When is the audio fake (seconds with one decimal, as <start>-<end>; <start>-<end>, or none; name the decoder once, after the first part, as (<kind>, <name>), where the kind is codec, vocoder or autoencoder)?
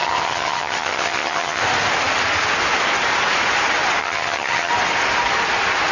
0.0-1.6 (vocoder, HiFi-GAN); 4.0-4.7